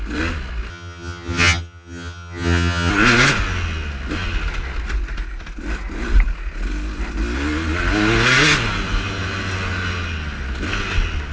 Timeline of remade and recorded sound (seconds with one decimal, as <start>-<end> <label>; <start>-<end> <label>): 0.0-0.7 recorded; 0.7-2.9 remade; 2.9-11.3 recorded